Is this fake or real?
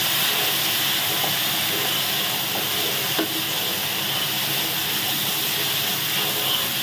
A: real